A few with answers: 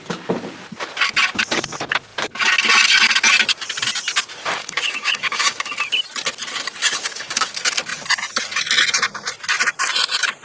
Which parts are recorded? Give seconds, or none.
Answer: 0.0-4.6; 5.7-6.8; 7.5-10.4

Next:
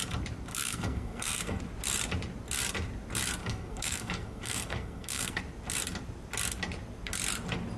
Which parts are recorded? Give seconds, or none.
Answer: 0.0-0.5; 1.6-3.4; 5.4-7.8

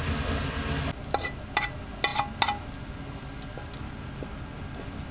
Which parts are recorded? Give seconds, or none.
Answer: 0.0-5.1

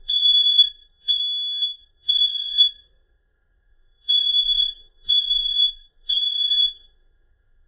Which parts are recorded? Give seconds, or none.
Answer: 1.2-1.8